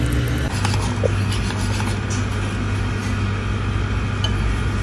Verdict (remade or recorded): recorded